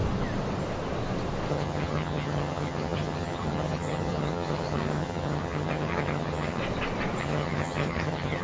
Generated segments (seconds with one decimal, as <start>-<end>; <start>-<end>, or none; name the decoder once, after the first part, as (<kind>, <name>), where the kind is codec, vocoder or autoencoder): 1.5-6.6 (vocoder, HiFi-GAN); 7.2-8.4